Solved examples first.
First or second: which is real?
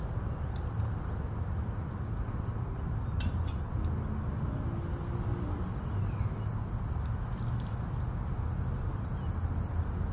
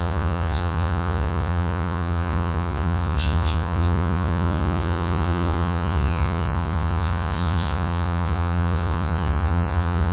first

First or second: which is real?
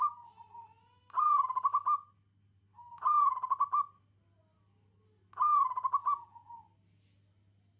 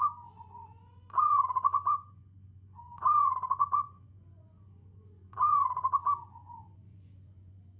first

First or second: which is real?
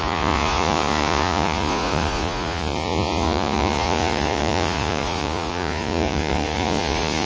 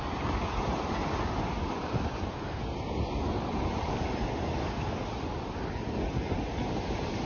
second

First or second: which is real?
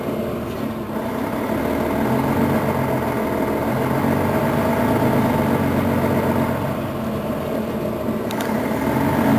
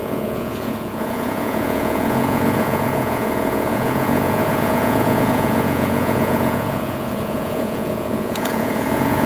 first